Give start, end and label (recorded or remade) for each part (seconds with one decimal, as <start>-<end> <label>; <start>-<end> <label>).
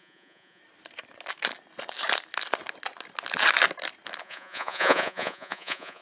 0.0-0.6 remade; 0.6-4.2 recorded; 4.2-6.0 remade